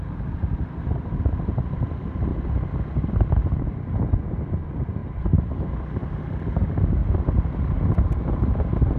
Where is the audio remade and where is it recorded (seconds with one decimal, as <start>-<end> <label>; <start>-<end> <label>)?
0.0-5.0 remade; 5.0-5.7 recorded; 5.7-7.0 remade; 7.0-8.6 recorded; 8.6-9.0 remade